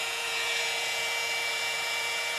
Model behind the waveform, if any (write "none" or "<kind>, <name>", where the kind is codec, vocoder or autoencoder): vocoder, Vocos